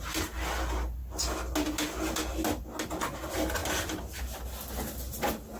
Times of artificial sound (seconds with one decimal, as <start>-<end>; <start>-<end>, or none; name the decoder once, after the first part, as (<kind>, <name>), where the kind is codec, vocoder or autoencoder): none